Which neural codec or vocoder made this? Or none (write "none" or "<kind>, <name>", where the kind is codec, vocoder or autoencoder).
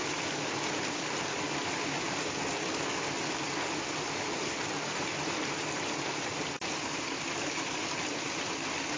none